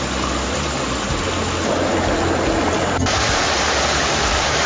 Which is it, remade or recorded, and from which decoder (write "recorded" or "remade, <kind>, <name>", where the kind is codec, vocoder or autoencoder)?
recorded